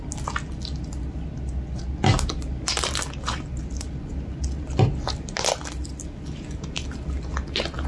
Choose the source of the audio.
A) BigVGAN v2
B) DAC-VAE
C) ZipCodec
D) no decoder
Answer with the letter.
D